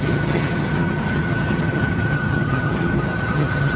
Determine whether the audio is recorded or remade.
remade